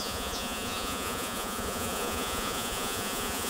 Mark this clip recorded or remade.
remade